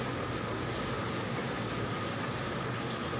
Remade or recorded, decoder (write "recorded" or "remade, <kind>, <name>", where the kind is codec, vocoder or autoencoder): recorded